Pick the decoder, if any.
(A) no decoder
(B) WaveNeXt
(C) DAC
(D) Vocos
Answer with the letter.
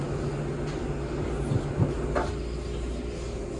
A